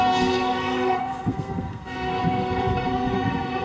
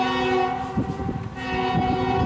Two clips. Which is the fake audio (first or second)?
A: first